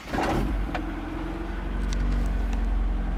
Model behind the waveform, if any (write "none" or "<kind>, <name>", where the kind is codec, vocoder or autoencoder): none